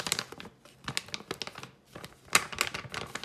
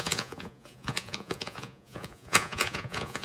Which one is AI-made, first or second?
second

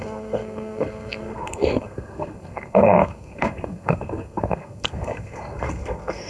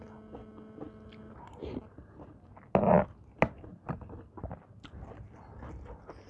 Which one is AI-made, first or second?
first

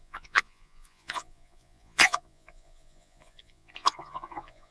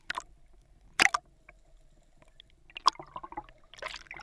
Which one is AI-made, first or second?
first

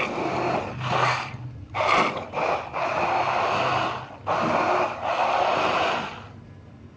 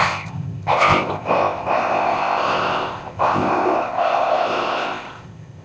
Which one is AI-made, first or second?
second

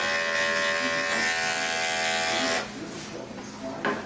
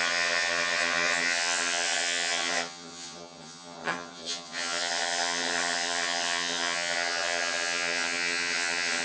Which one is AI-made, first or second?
second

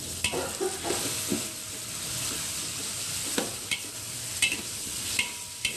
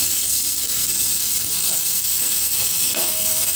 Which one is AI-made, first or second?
second